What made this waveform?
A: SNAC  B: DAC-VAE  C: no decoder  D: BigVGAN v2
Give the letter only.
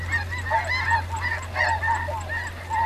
C